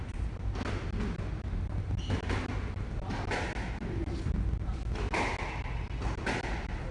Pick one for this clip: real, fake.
real